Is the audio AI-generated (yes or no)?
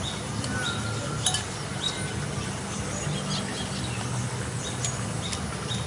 no